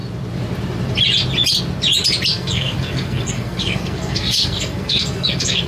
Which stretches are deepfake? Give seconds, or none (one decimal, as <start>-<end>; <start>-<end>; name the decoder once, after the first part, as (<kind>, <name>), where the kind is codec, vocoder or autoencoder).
2.3-5.7 (codec, SNAC)